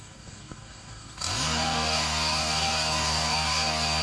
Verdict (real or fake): fake